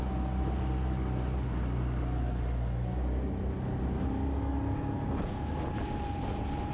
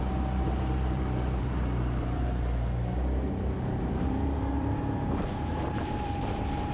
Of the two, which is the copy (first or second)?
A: second